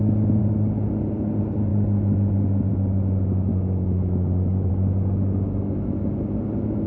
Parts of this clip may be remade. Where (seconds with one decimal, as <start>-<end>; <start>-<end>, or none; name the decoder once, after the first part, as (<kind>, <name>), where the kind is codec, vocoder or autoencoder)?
3.5-4.7 (codec, DAC)